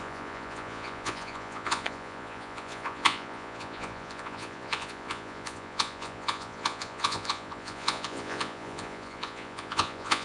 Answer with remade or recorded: remade